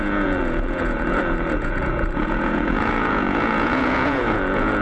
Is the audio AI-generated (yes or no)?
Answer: yes